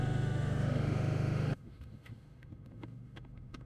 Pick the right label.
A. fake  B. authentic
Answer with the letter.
A